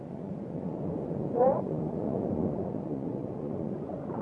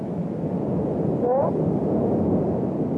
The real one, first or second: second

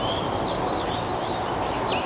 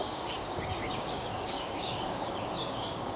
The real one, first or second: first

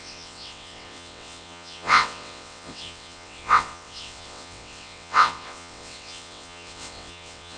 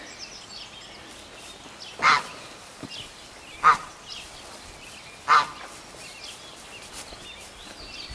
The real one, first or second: second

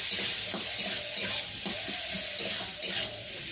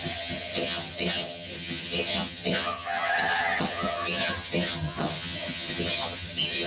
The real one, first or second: first